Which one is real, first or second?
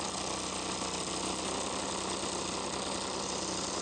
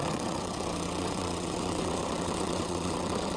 first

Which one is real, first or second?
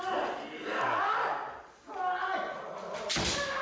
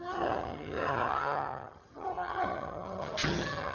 first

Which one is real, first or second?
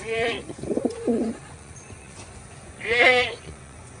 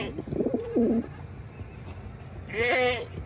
second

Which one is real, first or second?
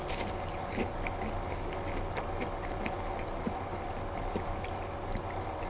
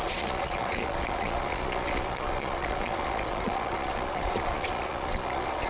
first